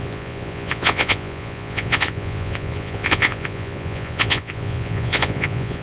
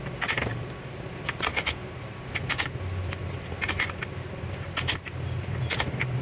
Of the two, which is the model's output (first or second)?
first